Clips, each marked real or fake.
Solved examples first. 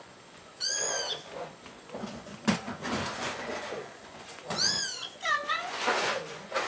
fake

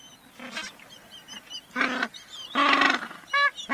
real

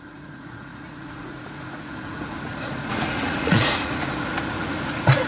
fake